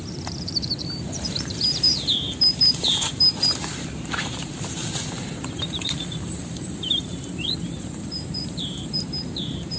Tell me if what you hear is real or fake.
fake